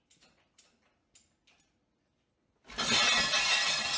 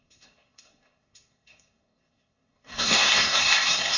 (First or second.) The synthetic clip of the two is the second